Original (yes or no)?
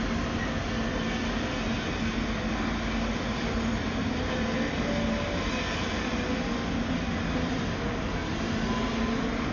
yes